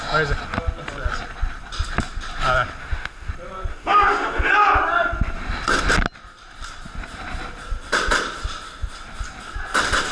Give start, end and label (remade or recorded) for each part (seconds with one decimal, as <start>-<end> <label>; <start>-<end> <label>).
0.0-2.8 recorded; 2.8-3.3 remade; 3.3-3.7 recorded; 3.7-4.5 remade; 4.5-10.1 recorded